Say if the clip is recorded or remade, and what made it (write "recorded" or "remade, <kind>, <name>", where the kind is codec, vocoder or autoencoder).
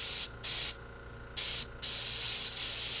recorded